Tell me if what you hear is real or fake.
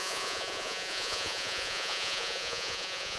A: fake